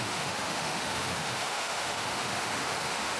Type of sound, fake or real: fake